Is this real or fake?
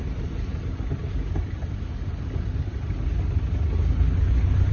real